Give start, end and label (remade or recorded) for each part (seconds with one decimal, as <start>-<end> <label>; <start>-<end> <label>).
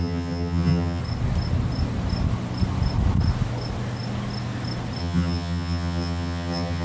0.0-1.0 remade; 1.0-5.0 recorded; 5.0-6.8 remade